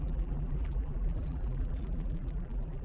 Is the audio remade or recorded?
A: remade